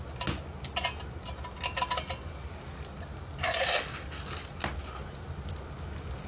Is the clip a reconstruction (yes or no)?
no